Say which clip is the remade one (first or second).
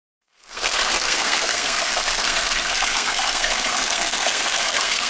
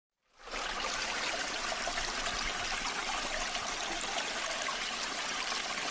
first